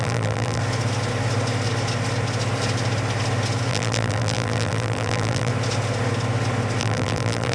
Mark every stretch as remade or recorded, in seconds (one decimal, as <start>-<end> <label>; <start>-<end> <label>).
0.0-0.6 remade; 0.6-3.7 recorded; 3.7-5.5 remade; 5.5-6.8 recorded; 6.8-7.5 remade